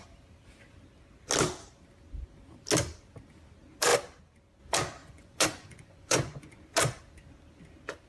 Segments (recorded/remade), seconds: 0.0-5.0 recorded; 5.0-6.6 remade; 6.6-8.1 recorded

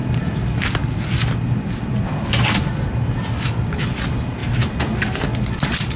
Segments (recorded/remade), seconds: 0.0-6.0 recorded